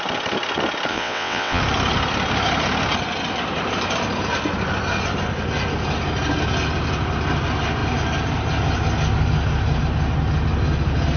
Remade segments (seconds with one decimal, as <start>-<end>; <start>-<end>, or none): 0.9-1.6